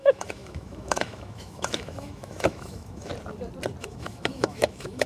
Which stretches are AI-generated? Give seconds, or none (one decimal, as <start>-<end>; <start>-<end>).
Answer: 0.0-3.1; 3.8-5.1